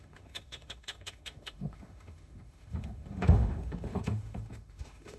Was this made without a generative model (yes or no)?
no